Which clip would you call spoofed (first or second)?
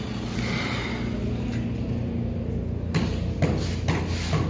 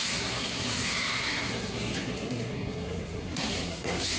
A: second